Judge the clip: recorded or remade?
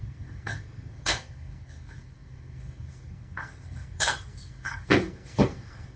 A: remade